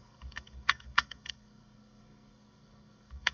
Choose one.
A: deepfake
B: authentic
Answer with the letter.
A